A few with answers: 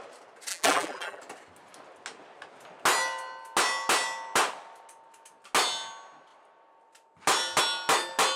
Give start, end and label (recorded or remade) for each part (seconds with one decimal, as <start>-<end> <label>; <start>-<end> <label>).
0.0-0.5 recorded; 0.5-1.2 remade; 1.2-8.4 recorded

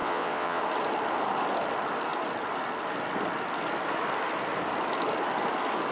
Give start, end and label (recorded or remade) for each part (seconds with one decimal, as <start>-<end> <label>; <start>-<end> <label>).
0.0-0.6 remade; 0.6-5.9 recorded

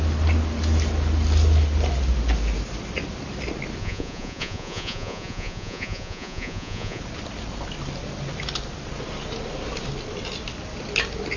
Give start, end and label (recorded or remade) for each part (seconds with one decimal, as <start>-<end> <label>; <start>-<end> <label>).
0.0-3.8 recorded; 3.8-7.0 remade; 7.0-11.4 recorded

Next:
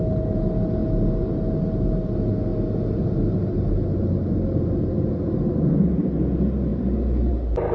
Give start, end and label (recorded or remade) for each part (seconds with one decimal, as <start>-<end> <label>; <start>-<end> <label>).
0.0-7.7 recorded

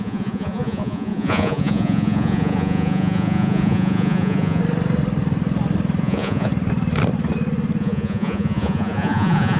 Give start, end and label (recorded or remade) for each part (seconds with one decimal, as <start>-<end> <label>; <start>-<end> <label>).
0.0-4.6 remade; 4.6-6.0 recorded; 6.0-6.5 remade; 6.5-7.8 recorded; 7.8-9.6 remade

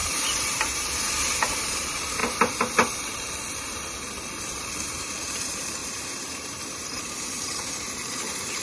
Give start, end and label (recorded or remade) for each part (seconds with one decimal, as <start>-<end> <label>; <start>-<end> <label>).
0.0-2.2 remade; 2.2-3.5 recorded; 3.5-8.6 remade

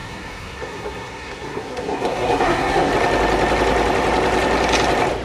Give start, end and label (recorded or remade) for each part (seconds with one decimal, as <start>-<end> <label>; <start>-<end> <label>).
0.0-2.9 remade; 2.9-5.2 recorded